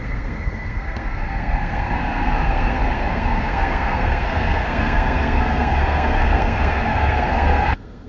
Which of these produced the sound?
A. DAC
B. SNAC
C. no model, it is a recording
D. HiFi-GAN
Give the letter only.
B